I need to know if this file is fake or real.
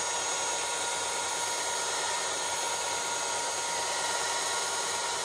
real